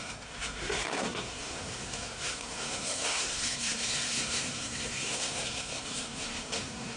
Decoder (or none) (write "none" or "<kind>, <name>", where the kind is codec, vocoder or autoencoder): codec, SNAC